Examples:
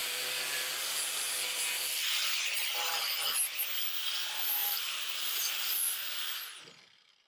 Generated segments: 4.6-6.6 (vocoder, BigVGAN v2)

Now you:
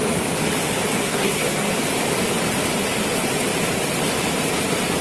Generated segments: 1.0-1.7 (codec, SNAC)

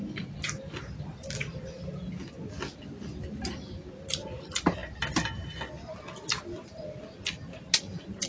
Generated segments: none

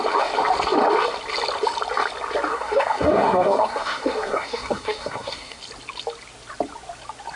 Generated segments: 2.5-5.6 (codec, SNAC)

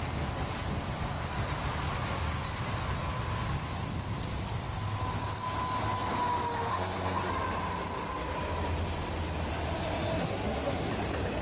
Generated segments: 6.7-7.3 (codec, SNAC); 10.2-10.9